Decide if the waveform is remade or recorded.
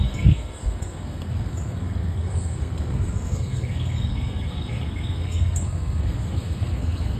remade